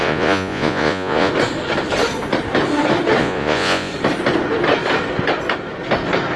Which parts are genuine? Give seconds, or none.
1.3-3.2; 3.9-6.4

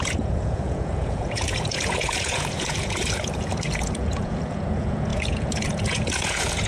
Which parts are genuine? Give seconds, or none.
none

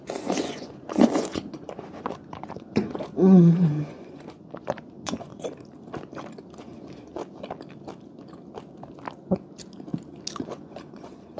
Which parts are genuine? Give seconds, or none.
5.3-6.6; 7.2-10.4

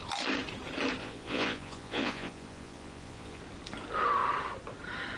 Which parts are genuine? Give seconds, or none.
0.0-1.0; 3.4-5.2